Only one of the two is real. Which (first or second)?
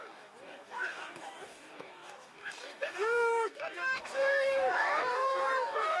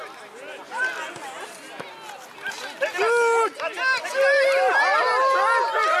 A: second